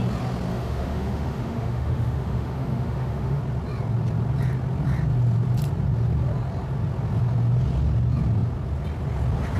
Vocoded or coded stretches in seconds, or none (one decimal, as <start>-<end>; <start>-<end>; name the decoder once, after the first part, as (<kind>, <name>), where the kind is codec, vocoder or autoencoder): 0.5-3.4 (autoencoder, DAC-VAE)